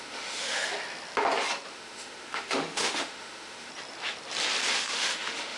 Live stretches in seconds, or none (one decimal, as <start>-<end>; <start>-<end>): 0.7-1.7; 3.7-4.7